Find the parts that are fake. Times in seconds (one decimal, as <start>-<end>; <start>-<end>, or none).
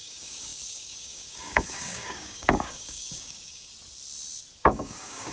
0.0-3.7; 4.6-5.3